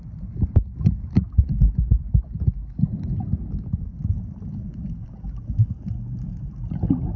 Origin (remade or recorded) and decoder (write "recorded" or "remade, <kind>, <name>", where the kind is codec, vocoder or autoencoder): recorded